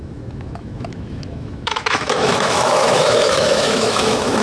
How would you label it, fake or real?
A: fake